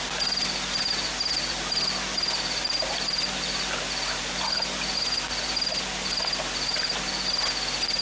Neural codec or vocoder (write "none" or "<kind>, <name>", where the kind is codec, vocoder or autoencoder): none